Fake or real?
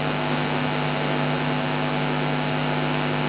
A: real